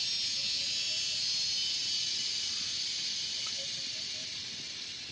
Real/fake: real